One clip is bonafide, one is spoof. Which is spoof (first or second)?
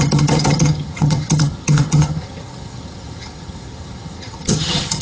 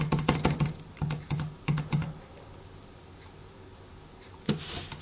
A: first